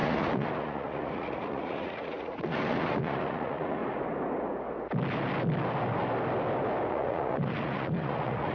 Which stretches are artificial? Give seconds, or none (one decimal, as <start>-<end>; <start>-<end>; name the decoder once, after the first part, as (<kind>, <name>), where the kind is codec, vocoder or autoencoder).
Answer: 0.0-3.8 (vocoder, Vocos); 6.9-8.5